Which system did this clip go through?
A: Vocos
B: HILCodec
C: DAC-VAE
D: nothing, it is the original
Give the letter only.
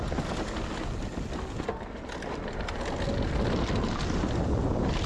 D